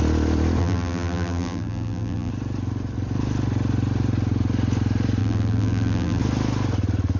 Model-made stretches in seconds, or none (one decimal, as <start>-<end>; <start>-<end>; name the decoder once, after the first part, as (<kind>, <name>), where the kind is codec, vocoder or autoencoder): 0.6-2.3 (vocoder, BigVGAN v2); 5.2-6.2